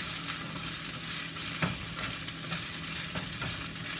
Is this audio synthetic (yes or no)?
no